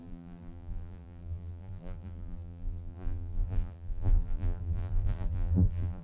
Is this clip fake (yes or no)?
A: yes